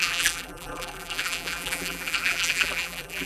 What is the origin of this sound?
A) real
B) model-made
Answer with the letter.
B